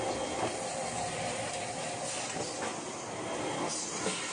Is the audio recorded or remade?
recorded